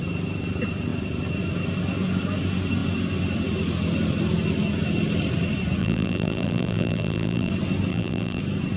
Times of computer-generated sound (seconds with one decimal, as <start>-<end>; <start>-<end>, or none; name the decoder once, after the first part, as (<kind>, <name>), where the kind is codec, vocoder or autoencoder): 5.8-7.5 (vocoder, BigVGAN v2); 7.9-8.4